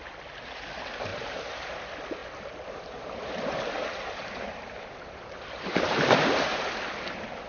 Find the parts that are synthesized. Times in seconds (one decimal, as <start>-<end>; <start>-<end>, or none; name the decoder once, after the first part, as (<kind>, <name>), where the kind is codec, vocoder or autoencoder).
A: 1.1-1.6 (vocoder, BigVGAN v2); 2.2-6.7